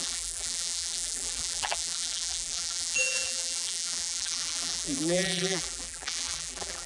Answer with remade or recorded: remade